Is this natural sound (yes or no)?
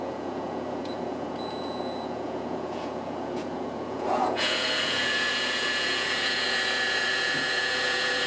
no